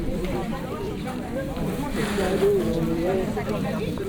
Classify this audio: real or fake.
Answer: fake